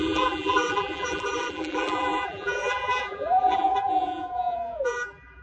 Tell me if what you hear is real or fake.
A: fake